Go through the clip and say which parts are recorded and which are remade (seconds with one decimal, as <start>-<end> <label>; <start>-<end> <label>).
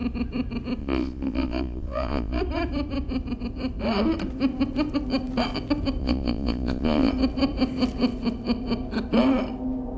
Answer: 0.0-0.8 recorded; 0.8-2.4 remade; 2.4-6.0 recorded; 6.0-7.1 remade; 7.1-10.0 recorded